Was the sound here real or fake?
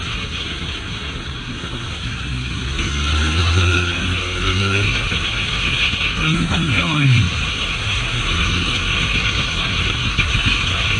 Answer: fake